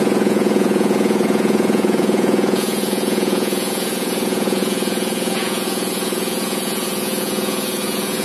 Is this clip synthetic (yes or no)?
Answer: yes